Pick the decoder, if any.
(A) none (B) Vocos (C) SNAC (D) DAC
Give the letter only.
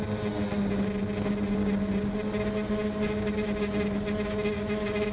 A